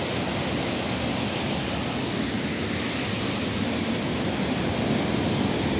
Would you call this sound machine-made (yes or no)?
no